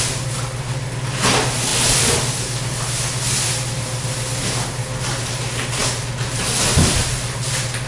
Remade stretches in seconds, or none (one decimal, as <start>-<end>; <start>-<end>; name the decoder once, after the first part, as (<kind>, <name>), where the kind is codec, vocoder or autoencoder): none